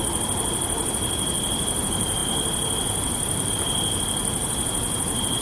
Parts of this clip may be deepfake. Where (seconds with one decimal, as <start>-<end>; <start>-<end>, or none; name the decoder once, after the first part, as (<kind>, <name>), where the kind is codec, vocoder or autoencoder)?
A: none